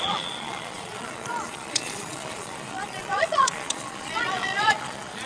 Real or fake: fake